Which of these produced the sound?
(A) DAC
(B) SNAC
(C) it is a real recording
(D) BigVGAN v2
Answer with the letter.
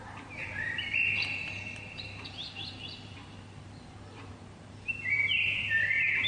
D